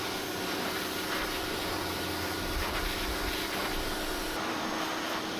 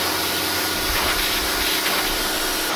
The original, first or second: second